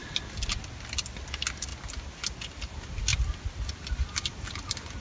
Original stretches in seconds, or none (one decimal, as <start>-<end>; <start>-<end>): 0.0-5.0